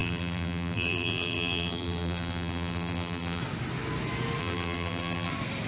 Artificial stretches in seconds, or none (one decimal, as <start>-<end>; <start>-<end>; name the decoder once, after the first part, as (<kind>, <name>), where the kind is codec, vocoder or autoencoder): 0.0-3.4 (vocoder, BigVGAN v2); 4.4-5.3